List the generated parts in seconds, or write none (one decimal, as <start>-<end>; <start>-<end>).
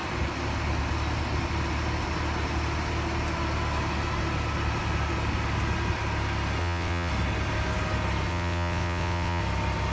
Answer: 6.6-7.1; 8.3-9.4